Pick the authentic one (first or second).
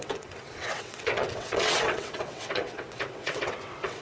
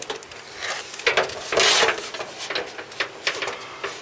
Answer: second